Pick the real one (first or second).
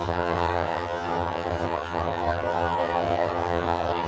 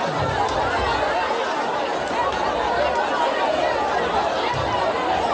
second